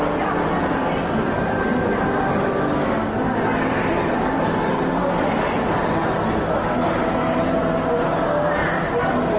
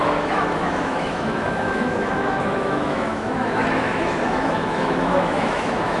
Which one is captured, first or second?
first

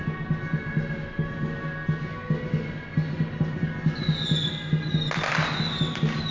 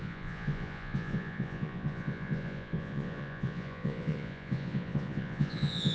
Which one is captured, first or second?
first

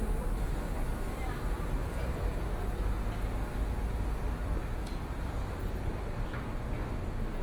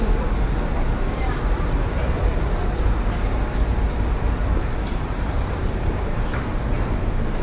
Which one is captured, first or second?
first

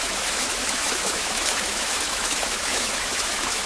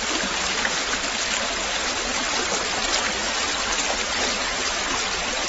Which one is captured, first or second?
second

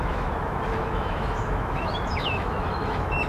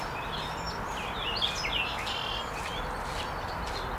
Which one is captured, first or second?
second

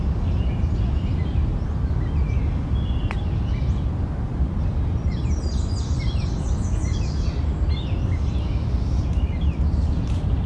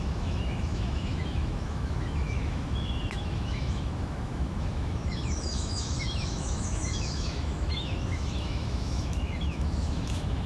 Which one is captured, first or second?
first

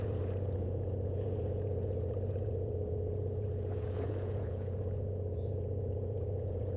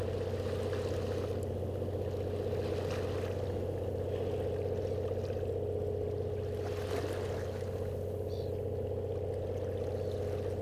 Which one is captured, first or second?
second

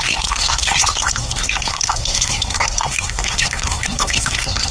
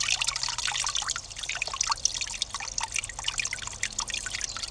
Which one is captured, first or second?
second